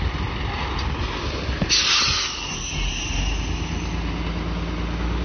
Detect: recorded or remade recorded